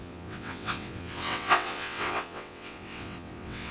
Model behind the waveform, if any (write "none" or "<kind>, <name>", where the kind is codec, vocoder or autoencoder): vocoder, WaveNeXt